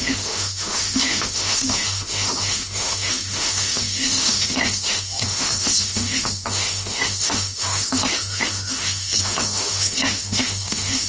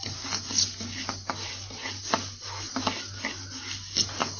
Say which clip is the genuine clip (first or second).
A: second